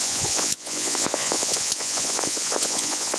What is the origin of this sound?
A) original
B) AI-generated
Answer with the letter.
B